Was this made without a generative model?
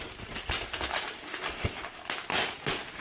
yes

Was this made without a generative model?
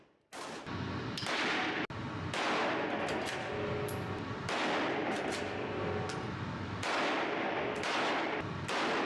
yes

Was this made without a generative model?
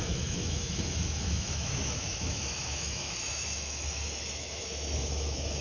no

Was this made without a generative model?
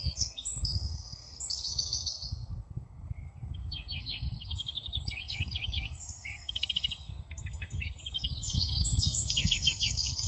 no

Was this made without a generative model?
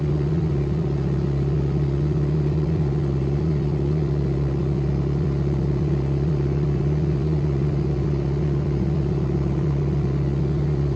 no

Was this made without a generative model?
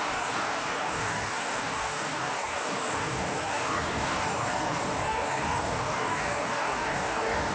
no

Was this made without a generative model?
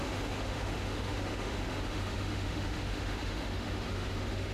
no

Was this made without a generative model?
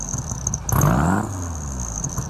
yes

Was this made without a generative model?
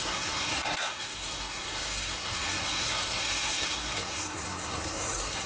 no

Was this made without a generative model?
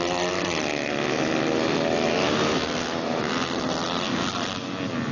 yes